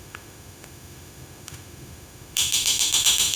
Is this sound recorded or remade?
remade